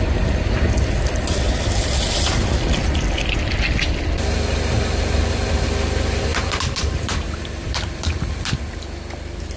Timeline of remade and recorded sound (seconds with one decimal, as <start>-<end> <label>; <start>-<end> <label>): 0.0-6.3 recorded; 6.3-8.5 remade; 8.5-9.6 recorded